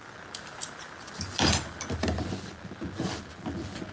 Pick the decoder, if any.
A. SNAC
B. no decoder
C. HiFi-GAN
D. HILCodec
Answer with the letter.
B